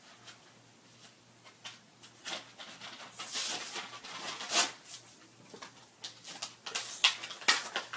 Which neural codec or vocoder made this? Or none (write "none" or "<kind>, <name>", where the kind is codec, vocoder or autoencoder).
none